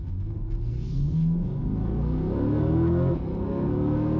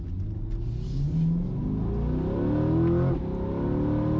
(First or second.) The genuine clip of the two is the second